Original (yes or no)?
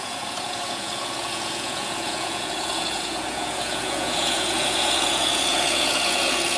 no